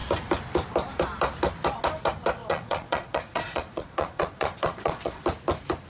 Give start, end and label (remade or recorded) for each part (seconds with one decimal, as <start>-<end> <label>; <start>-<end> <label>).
0.0-2.4 recorded; 2.4-5.2 remade; 5.2-5.9 recorded

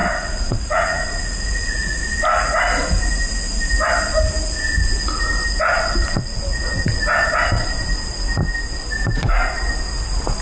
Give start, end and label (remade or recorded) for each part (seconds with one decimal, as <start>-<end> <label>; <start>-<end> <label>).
0.0-2.0 remade; 2.0-6.0 recorded; 6.0-7.0 remade; 7.0-10.4 recorded

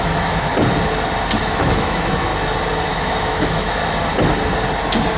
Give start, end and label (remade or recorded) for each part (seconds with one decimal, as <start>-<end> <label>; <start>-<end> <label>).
0.0-0.5 remade; 0.5-1.4 recorded; 1.4-2.3 remade; 2.3-2.9 recorded; 2.9-3.8 remade; 3.8-5.2 recorded

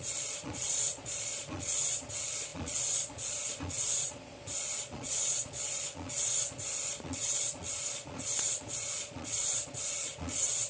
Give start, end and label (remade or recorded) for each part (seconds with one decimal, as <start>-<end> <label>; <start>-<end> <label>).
0.0-10.7 remade

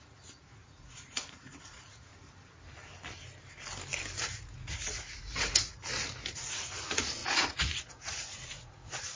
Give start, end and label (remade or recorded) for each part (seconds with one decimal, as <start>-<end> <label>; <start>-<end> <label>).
0.0-2.1 remade; 2.1-4.2 recorded; 4.2-5.8 remade; 5.8-6.3 recorded; 6.3-9.2 remade

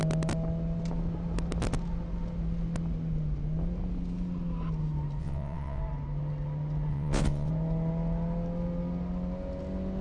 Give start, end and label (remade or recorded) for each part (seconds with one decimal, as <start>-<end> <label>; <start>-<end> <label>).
0.0-5.2 recorded; 5.2-5.8 remade; 5.8-6.9 recorded; 6.9-7.5 remade; 7.5-10.0 recorded

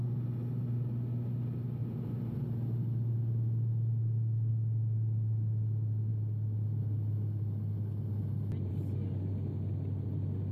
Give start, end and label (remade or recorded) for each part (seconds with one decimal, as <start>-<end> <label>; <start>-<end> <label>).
0.0-10.5 recorded